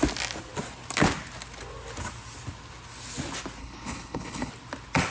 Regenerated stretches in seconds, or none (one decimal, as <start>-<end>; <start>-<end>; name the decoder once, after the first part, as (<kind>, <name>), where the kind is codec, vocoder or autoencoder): 3.6-4.5 (codec, HILCodec)